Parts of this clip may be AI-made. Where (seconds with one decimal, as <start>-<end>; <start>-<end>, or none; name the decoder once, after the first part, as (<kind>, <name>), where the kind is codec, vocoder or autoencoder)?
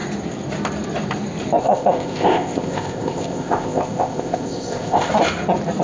1.6-5.1 (codec, ZipCodec)